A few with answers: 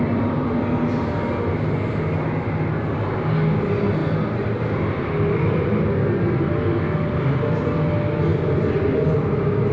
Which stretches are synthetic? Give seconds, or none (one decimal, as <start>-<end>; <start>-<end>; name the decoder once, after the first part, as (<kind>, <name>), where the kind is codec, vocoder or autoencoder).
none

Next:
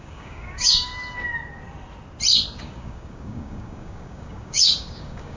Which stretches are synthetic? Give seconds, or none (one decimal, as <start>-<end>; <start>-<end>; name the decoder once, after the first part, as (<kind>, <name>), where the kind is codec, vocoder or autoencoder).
0.0-0.9 (codec, DAC); 2.6-5.4

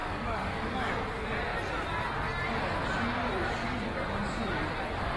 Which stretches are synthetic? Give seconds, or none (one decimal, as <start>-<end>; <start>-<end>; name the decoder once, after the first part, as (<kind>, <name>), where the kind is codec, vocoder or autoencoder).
0.0-0.9 (codec, DAC)